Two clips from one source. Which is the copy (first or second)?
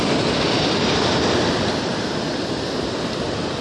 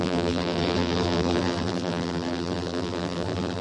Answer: second